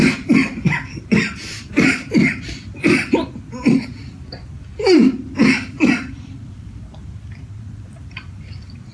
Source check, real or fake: fake